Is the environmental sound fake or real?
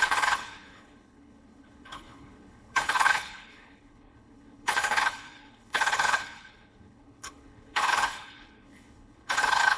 fake